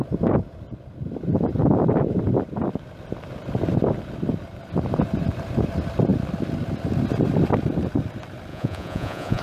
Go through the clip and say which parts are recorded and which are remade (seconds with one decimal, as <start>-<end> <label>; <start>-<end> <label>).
0.0-8.5 recorded; 8.5-9.4 remade